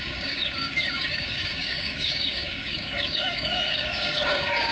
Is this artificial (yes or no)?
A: yes